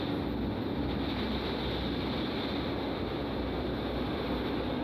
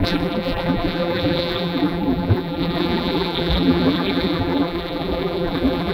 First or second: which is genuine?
first